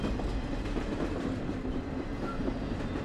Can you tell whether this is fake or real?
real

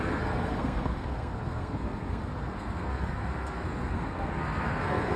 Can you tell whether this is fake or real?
fake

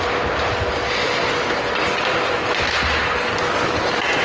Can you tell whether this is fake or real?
real